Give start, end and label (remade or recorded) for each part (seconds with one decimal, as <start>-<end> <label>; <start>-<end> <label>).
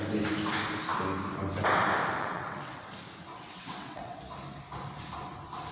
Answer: 0.0-2.2 recorded; 2.2-2.9 remade; 2.9-3.3 recorded; 3.3-4.2 remade; 4.2-5.7 recorded